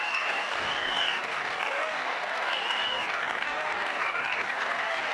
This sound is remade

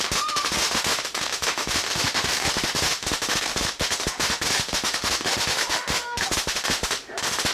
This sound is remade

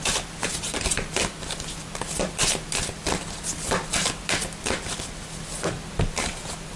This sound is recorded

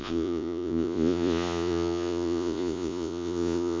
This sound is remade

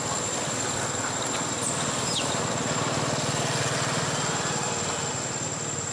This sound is recorded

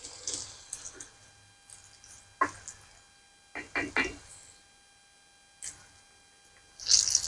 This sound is recorded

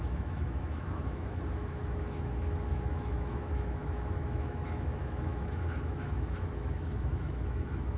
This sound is remade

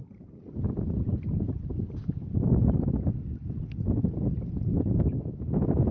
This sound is recorded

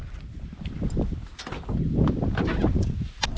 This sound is recorded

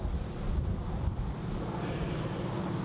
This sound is remade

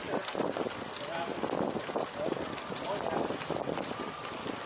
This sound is recorded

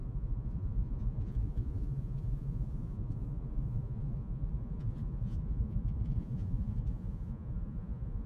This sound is remade